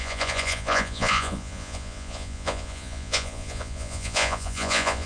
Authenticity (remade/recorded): remade